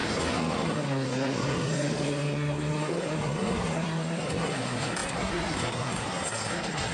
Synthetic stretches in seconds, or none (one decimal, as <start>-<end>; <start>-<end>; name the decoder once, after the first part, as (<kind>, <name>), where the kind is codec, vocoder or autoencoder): 0.0-6.9 (codec, SNAC)